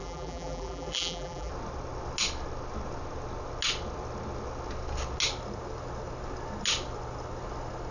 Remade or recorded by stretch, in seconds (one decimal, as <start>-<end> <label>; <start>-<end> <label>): 0.0-1.5 remade; 1.5-7.9 recorded